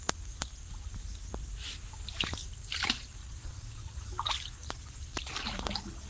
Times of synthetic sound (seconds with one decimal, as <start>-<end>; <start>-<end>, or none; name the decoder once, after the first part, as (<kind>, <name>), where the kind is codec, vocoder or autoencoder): 3.2-4.0 (vocoder, WaveNeXt)